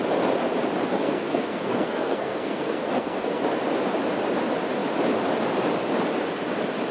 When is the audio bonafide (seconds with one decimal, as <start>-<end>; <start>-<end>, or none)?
0.0-0.9; 3.4-6.9